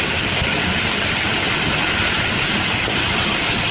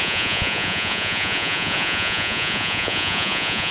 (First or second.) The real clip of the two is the first